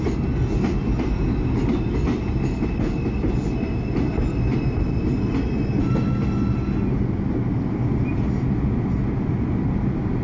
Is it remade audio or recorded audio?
recorded